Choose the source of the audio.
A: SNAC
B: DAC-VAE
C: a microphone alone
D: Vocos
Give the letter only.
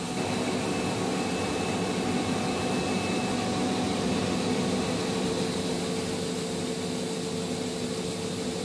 C